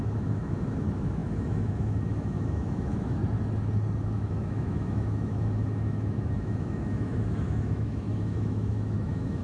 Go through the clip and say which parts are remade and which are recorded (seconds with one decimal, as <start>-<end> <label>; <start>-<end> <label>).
0.0-3.2 remade; 3.2-4.0 recorded; 4.0-9.4 remade